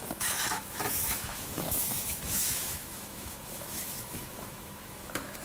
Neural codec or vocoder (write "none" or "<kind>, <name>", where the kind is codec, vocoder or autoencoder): autoencoder, DAC-VAE